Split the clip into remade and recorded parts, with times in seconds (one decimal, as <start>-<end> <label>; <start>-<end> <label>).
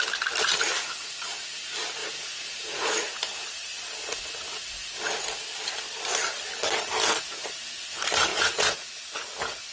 0.0-2.0 recorded; 2.0-2.9 remade; 2.9-8.3 recorded; 8.3-8.9 remade; 8.9-9.7 recorded